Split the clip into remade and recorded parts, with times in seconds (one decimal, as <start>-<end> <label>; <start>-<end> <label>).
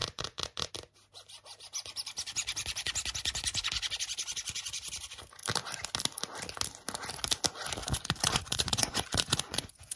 0.0-0.7 remade; 0.7-7.8 recorded; 7.8-10.0 remade